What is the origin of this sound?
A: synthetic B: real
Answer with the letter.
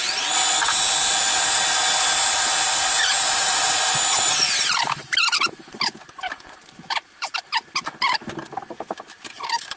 B